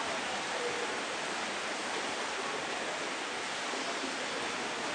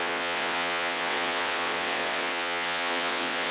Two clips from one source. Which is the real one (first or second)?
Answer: first